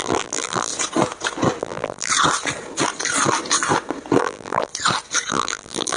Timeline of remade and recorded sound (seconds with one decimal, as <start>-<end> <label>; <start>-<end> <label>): 0.0-0.7 remade; 0.7-1.6 recorded; 1.6-2.1 remade; 2.1-4.2 recorded; 4.2-4.7 remade; 4.7-5.3 recorded; 5.3-6.0 remade